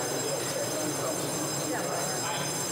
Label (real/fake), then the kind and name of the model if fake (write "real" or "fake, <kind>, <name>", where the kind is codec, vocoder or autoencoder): real